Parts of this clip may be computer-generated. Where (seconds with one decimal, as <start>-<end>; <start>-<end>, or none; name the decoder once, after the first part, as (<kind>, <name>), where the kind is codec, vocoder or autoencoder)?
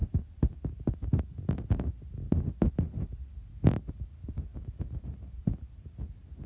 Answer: none